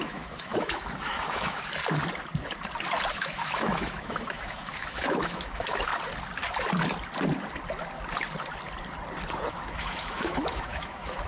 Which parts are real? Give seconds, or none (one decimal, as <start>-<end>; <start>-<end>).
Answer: 1.8-3.1; 5.9-9.5